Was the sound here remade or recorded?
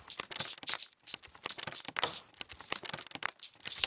recorded